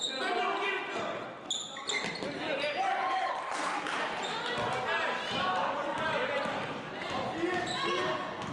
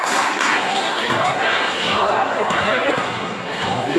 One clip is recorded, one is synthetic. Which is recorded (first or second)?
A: first